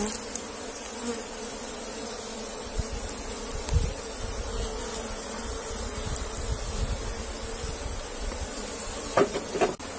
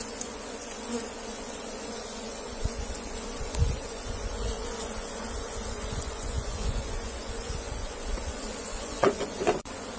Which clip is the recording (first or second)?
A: first